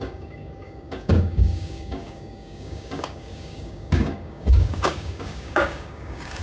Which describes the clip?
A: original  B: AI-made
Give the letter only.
B